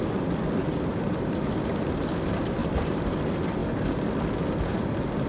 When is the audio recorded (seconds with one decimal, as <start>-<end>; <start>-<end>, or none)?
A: 0.0-0.6; 1.3-2.6; 3.2-5.3